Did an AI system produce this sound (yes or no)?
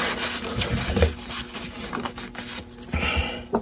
no